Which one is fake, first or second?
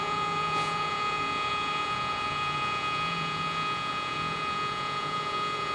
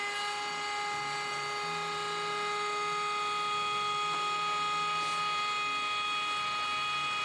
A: first